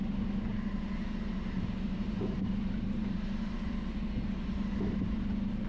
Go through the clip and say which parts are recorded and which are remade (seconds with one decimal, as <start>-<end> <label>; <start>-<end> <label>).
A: 0.0-0.5 recorded; 0.5-3.7 remade; 3.7-5.7 recorded